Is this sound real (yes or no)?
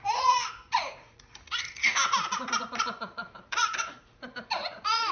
no